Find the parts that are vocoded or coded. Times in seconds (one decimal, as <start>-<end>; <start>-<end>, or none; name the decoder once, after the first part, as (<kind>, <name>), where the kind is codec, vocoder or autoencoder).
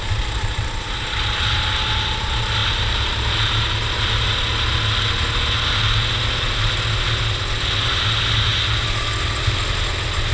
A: none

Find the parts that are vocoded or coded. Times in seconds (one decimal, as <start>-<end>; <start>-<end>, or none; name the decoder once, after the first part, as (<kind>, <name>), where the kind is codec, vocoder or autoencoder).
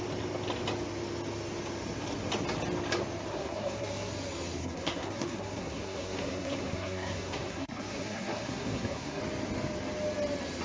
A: 3.3-4.1 (codec, SNAC); 4.6-9.2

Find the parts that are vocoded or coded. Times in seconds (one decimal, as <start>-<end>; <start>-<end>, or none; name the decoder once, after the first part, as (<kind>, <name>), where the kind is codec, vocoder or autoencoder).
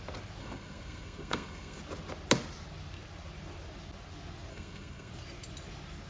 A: 0.4-1.8 (codec, SNAC); 4.5-5.1